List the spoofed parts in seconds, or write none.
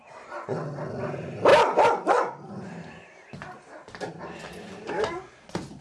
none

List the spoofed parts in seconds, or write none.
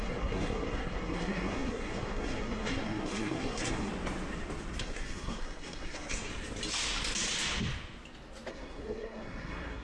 0.0-3.9 (codec, SNAC); 4.8-6.3; 8.5-9.8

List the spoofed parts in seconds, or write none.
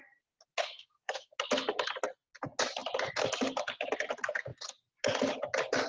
0.6-1.3 (codec, SNAC)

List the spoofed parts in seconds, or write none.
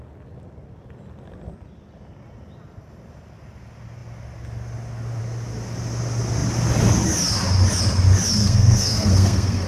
8.4-9.7 (codec, SNAC)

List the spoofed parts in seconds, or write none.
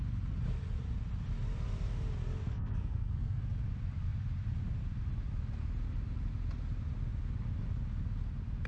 2.4-3.4 (codec, SNAC)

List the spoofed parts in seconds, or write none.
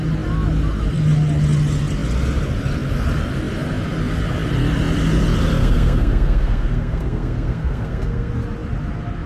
5.6-8.3 (codec, SNAC)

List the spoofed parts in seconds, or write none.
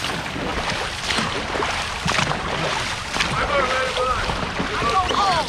none